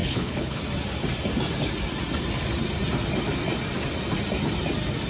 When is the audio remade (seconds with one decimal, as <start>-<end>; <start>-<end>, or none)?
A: 0.0-0.6